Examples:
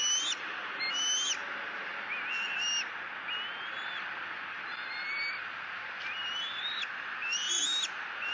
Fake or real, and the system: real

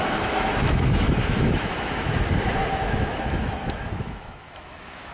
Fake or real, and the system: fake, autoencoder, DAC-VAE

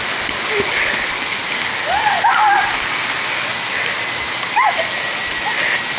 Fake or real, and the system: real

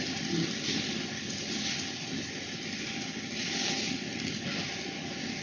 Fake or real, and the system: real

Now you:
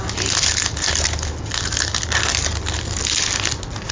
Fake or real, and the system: real